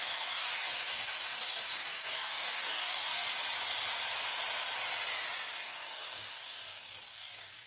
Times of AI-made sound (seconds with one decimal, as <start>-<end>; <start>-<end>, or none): 0.0-3.3; 5.5-7.7

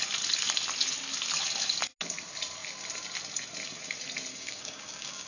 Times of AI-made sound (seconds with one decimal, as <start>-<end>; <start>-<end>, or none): 4.3-5.3